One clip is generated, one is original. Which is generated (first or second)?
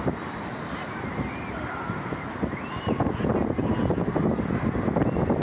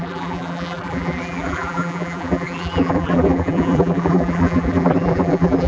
second